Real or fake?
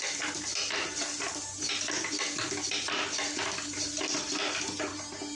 real